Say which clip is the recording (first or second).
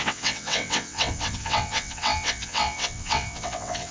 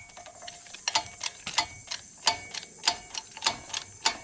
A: second